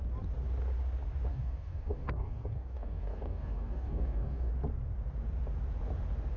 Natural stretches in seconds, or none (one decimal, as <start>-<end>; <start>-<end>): 0.0-1.3; 4.5-6.4

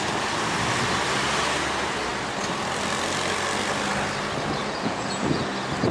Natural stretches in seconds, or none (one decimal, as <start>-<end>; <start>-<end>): 0.0-4.6; 5.4-5.9

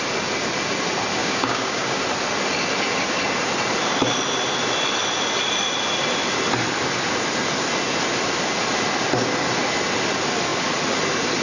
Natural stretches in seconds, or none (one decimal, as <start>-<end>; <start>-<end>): 0.0-1.2; 2.0-11.4

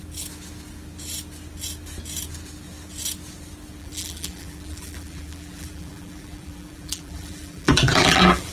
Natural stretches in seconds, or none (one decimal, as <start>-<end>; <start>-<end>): 0.0-3.8

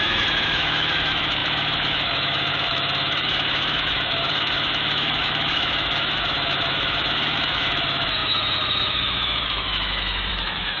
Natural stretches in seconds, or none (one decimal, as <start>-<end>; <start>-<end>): none

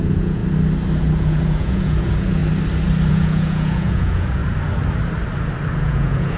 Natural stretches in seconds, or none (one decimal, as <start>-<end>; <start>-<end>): 0.4-1.0; 2.4-3.1; 4.4-5.8